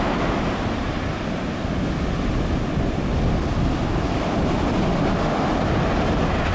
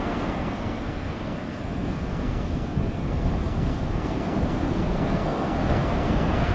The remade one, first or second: second